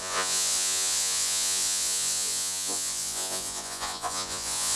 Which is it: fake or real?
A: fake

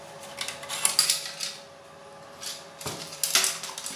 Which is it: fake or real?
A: real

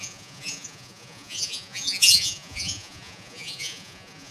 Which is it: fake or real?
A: fake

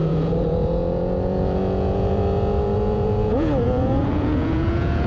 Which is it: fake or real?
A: fake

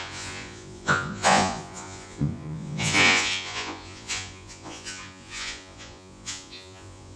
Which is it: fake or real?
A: fake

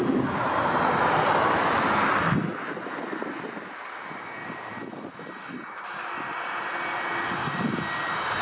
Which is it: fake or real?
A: real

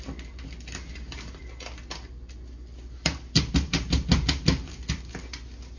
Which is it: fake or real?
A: real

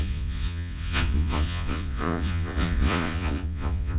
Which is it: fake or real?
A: fake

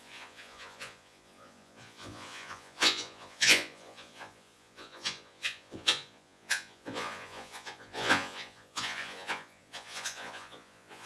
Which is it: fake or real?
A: fake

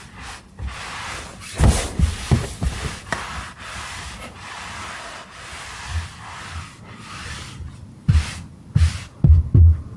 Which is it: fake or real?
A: real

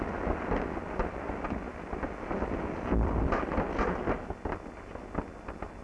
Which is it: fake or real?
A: real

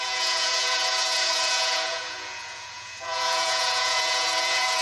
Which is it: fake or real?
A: fake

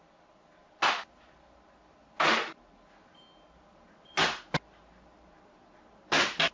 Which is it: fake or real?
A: real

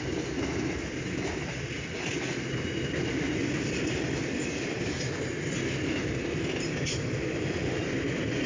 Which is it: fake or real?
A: real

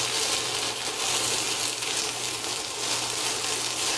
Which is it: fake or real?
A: real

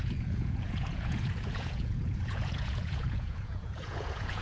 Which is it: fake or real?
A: fake